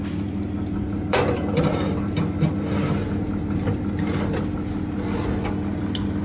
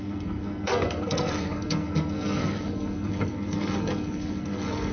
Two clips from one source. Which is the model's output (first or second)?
second